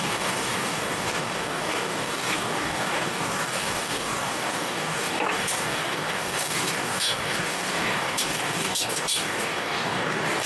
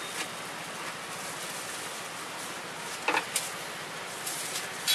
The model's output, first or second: first